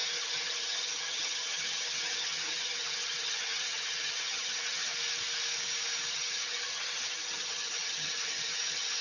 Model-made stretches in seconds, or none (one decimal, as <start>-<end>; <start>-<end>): 0.0-4.9; 6.1-9.0